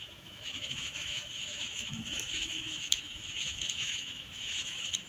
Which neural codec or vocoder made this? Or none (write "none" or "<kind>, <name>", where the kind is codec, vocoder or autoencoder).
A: autoencoder, DAC-VAE